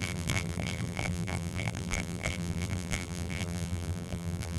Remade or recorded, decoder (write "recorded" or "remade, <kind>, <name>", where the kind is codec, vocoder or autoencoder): remade, vocoder, BigVGAN v2